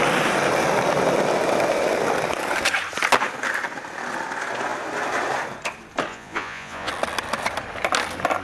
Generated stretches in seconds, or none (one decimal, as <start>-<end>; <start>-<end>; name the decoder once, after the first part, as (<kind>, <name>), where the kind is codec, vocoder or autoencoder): 6.1-6.9 (vocoder, Vocos)